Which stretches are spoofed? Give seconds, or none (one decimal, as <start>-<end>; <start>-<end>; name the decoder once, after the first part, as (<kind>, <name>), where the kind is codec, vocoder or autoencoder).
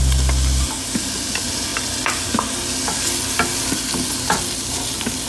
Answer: none